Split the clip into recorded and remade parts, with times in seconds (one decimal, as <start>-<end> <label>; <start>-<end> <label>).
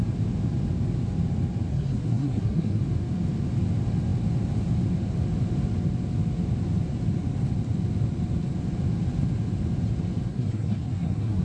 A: 0.0-1.7 recorded; 1.7-2.8 remade; 2.8-10.3 recorded; 10.3-11.4 remade